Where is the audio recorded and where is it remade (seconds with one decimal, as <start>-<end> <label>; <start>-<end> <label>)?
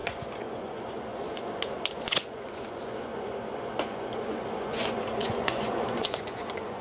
0.0-6.8 remade